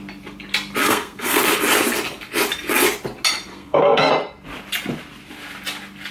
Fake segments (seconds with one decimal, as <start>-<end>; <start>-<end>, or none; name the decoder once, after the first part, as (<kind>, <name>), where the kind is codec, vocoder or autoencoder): 0.8-1.4 (codec, SNAC); 3.5-4.1